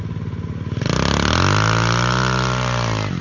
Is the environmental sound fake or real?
real